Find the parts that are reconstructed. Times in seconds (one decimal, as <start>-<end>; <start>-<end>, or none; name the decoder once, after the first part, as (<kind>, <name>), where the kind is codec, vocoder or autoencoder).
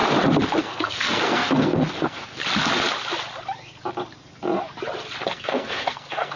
0.6-2.4 (codec, SNAC); 5.3-6.4